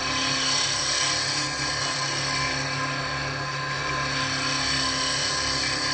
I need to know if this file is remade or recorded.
recorded